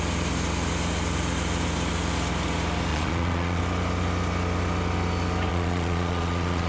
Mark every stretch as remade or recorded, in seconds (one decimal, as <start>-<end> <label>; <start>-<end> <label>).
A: 0.0-2.9 recorded; 2.9-3.6 remade; 3.6-5.5 recorded; 5.5-6.7 remade